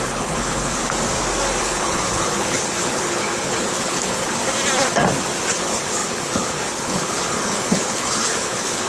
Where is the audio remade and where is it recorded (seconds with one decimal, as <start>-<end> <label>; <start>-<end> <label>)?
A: 0.0-0.8 remade; 0.8-1.6 recorded; 1.6-4.4 remade; 4.4-5.5 recorded; 5.5-8.9 remade